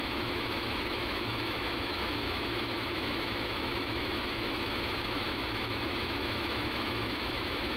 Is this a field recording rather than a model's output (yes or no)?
no